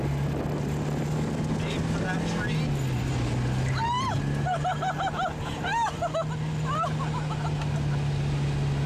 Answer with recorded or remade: recorded